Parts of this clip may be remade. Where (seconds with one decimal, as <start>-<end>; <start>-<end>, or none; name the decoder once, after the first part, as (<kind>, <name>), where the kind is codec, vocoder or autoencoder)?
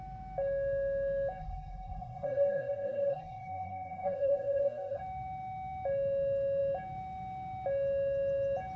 1.4-5.0 (codec, SNAC)